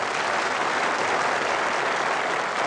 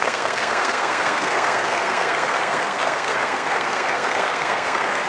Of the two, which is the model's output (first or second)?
second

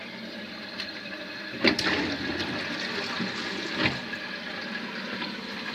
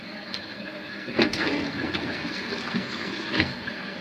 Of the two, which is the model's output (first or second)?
second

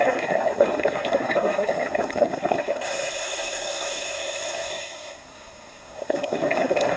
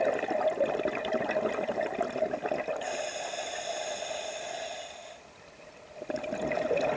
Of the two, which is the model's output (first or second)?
first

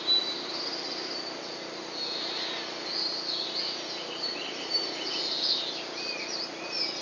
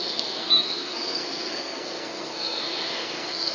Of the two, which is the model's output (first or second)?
second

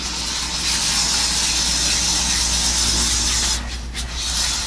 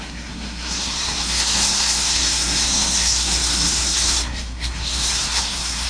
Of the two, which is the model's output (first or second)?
second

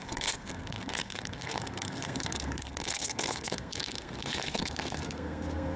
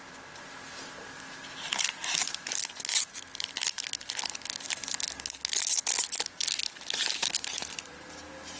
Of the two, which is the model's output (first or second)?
first